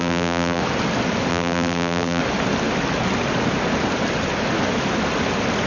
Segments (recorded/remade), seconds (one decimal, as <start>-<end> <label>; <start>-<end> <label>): 0.0-0.6 remade; 0.6-1.3 recorded; 1.3-2.2 remade; 2.2-5.7 recorded